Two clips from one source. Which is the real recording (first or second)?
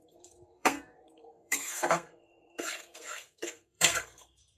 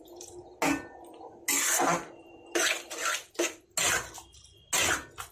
second